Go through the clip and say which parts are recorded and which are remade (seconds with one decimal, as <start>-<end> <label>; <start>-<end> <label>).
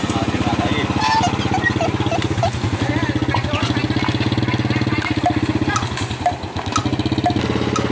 0.0-7.9 recorded